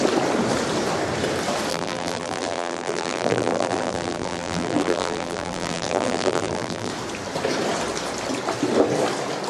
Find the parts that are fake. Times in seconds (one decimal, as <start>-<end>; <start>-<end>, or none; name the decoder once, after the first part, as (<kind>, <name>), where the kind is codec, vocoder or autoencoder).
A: 1.7-6.9 (vocoder, BigVGAN v2)